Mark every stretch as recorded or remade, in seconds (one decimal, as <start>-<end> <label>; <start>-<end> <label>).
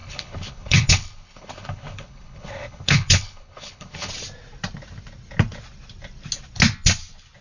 0.0-4.1 remade; 4.1-7.4 recorded